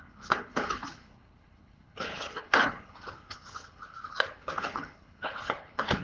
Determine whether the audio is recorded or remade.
remade